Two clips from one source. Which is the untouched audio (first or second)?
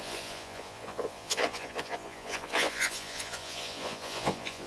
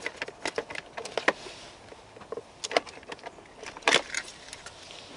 second